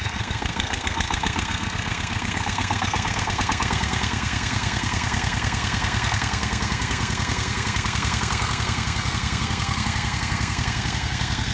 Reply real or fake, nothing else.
fake